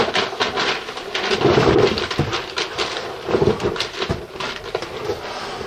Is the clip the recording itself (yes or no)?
yes